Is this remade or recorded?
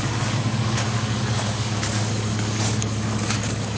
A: remade